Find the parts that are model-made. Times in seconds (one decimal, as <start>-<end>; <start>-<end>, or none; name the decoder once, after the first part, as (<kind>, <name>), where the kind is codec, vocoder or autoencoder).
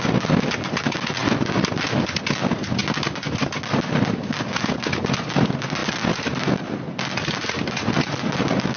none